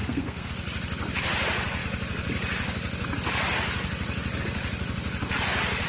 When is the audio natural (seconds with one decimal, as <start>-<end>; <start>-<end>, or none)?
0.5-5.9